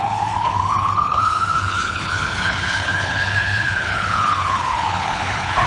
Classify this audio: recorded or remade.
remade